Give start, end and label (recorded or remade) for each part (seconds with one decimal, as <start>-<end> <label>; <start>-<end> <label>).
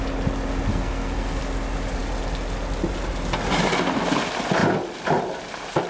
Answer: 0.0-0.7 recorded; 0.7-1.4 remade; 1.4-5.9 recorded